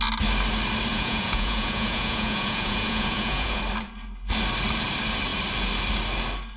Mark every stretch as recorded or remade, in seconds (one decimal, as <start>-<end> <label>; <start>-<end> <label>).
0.0-0.9 recorded; 0.9-3.6 remade; 3.6-6.6 recorded